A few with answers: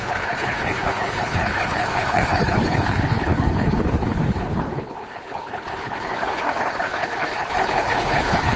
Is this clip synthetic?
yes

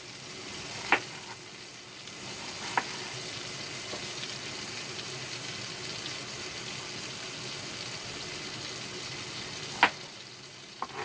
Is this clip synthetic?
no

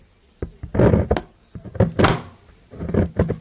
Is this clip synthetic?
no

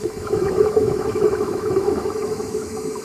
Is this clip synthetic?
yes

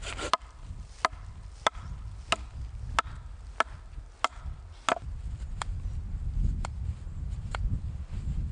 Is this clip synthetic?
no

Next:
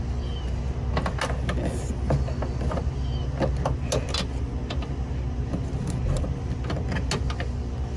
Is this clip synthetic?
no